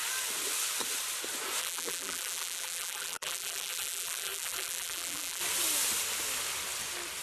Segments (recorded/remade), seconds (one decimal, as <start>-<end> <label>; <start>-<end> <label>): 0.0-1.6 recorded; 1.6-5.4 remade; 5.4-7.2 recorded